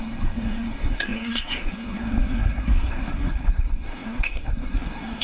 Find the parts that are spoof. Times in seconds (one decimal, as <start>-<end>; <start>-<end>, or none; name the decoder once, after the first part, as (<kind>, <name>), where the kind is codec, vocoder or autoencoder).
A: 0.0-5.2 (codec, SNAC)